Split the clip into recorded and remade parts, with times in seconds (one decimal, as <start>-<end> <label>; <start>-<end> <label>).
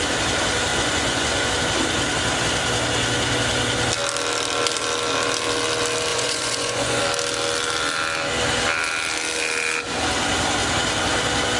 0.0-0.7 recorded; 0.7-1.5 remade; 1.5-6.1 recorded; 6.1-7.0 remade; 7.0-11.6 recorded